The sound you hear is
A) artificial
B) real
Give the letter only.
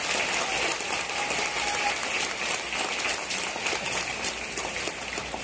B